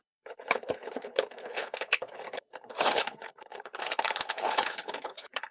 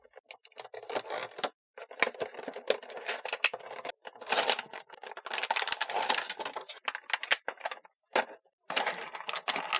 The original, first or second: second